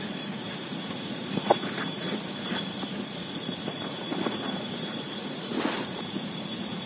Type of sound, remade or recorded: remade